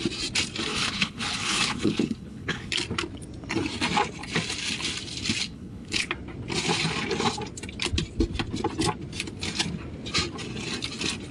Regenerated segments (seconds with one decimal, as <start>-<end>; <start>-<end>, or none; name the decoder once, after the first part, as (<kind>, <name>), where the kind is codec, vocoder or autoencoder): 0.7-2.7 (codec, HILCodec); 5.4-6.1